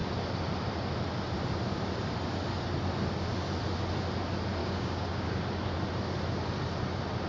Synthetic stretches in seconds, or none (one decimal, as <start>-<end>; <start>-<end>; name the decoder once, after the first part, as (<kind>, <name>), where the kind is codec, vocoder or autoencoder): 4.6-5.4 (codec, DAC)